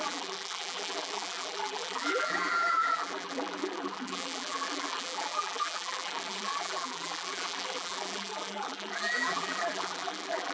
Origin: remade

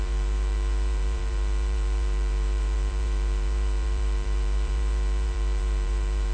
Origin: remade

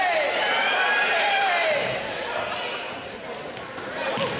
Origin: recorded